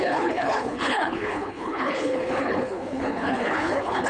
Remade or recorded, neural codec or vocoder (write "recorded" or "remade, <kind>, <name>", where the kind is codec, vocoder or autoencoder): remade, codec, HILCodec